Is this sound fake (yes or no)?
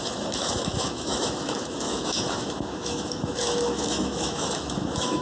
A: yes